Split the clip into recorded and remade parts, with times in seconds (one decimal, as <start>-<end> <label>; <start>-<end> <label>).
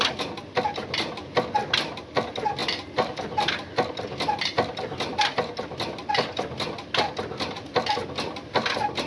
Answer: 0.0-9.1 recorded